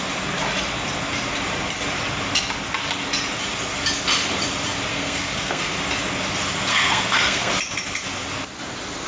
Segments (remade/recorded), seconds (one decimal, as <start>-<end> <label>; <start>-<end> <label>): 0.0-4.9 recorded; 4.9-5.8 remade; 5.8-6.7 recorded; 6.7-7.5 remade; 7.5-9.1 recorded